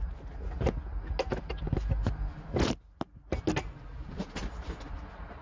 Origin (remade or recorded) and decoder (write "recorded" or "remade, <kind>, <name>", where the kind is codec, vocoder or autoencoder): recorded